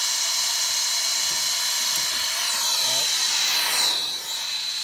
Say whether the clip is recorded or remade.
recorded